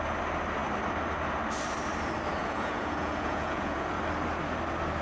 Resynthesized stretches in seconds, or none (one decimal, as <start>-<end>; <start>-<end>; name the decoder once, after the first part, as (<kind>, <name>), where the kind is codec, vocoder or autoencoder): 2.4-4.0 (vocoder, Vocos)